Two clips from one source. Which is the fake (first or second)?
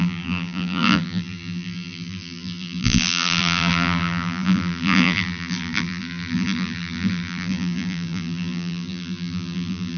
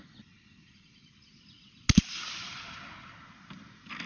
first